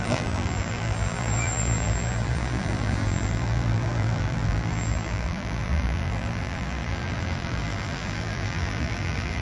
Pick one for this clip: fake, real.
fake